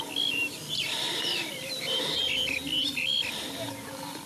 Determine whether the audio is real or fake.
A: fake